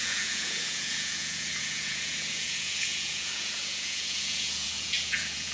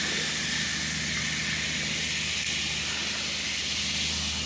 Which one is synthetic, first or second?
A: first